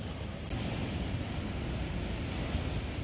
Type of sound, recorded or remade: recorded